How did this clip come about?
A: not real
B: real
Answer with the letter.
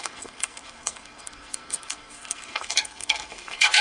A